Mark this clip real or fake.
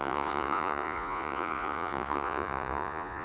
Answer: fake